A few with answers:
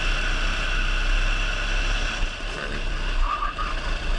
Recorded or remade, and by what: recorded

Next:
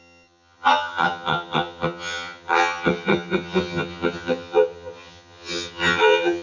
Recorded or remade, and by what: remade, vocoder, HiFi-GAN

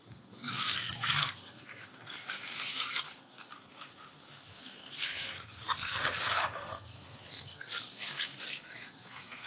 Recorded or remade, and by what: remade, codec, SNAC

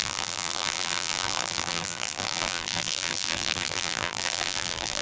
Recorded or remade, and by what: remade, vocoder, BigVGAN v2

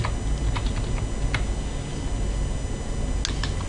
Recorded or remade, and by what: recorded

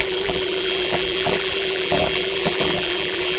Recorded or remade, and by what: remade, vocoder, BigVGAN v2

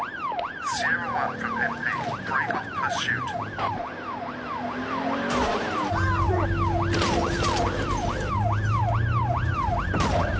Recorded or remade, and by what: recorded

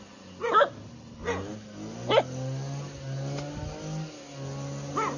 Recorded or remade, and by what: recorded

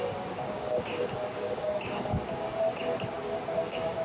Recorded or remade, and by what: remade, codec, DAC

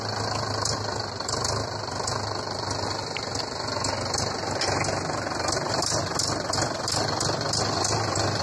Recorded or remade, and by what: recorded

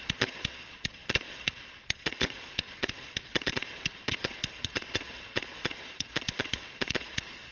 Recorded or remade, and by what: remade, vocoder, Vocos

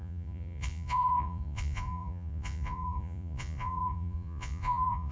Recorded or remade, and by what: remade, vocoder, Vocos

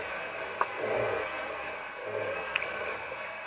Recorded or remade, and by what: remade, codec, SNAC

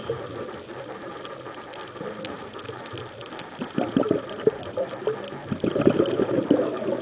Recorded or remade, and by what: recorded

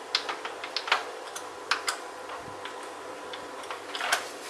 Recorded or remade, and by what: recorded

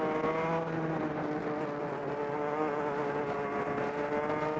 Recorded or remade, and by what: recorded